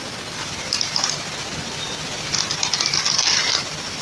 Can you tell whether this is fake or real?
real